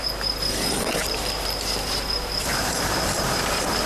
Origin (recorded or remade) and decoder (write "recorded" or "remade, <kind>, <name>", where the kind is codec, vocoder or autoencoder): remade, vocoder, BigVGAN v2